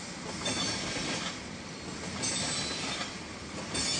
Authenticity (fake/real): real